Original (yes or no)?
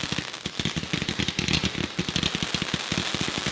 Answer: yes